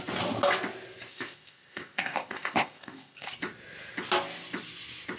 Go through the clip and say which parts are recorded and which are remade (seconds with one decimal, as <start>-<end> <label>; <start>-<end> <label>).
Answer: 0.0-1.1 recorded; 1.1-3.3 remade; 3.3-5.2 recorded